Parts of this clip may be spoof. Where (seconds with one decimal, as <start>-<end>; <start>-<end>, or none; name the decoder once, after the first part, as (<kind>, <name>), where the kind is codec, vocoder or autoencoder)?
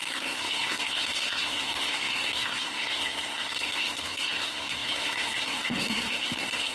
0.0-6.7 (codec, SNAC)